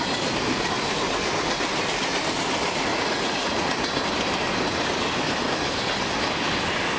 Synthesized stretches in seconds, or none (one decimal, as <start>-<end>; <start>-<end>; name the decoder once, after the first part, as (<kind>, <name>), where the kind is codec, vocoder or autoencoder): 2.9-4.0 (vocoder, Vocos)